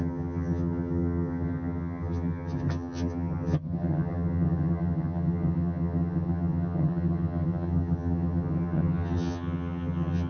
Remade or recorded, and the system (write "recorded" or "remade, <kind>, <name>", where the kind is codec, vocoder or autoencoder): remade, vocoder, HiFi-GAN